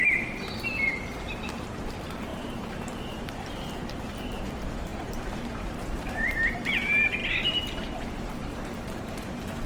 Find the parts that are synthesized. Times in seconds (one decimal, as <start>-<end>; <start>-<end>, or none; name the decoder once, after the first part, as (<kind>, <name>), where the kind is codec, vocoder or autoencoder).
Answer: 0.0-9.7 (vocoder, BigVGAN v2)

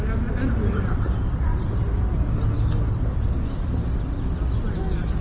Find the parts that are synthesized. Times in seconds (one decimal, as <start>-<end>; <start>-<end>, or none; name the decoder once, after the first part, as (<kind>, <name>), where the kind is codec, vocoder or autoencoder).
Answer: none